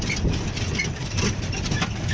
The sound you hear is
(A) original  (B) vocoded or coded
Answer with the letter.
A